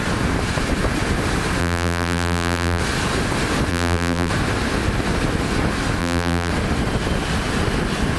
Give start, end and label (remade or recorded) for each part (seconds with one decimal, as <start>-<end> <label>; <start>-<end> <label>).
0.0-1.6 recorded; 1.6-2.8 remade; 2.8-3.7 recorded; 3.7-4.3 remade; 4.3-6.0 recorded; 6.0-6.5 remade; 6.5-8.2 recorded